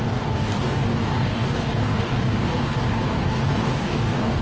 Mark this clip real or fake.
fake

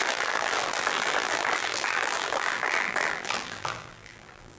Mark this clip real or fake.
fake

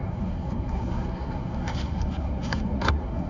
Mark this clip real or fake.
fake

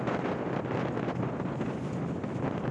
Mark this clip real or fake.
real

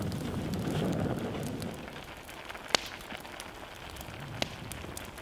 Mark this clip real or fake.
real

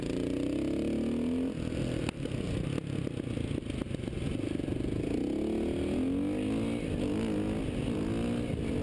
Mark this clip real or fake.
real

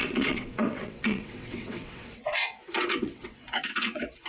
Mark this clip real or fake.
fake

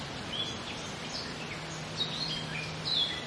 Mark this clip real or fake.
real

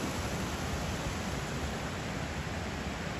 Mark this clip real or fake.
real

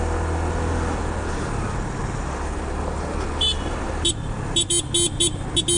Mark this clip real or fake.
real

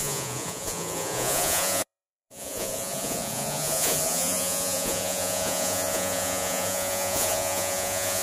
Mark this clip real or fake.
fake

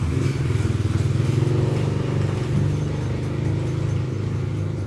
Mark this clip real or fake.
real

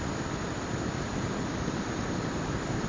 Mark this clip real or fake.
real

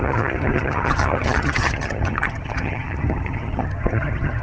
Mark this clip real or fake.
fake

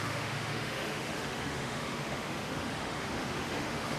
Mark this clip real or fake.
fake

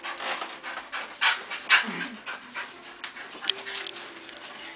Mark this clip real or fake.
real